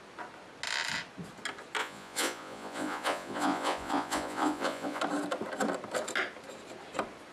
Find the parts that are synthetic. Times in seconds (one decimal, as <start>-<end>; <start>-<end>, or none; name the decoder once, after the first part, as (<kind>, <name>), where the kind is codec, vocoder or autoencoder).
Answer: 1.8-5.0 (vocoder, Vocos)